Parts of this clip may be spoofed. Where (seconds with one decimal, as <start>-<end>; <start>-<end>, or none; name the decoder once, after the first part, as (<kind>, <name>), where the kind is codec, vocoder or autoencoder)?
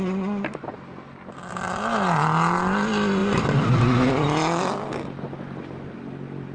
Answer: 3.2-3.8 (vocoder, BigVGAN v2)